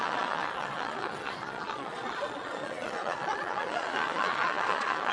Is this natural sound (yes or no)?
no